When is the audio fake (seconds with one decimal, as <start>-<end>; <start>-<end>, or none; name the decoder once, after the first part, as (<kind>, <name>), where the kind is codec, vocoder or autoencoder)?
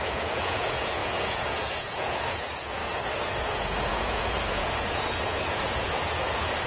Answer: 0.0-6.7 (vocoder, Vocos)